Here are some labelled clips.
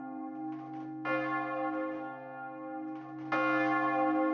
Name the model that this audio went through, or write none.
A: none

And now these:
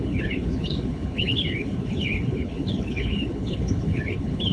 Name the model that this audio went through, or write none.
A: codec, HILCodec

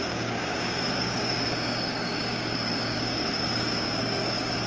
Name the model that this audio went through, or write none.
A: codec, DAC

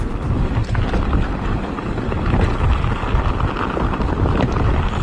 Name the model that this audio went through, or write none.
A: none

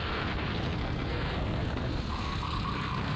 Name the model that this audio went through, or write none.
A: codec, SNAC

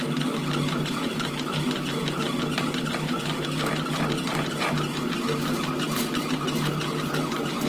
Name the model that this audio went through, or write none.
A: none